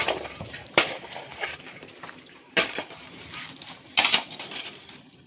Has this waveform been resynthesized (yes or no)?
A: yes